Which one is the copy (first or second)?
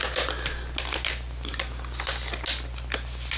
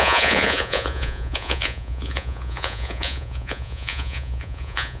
second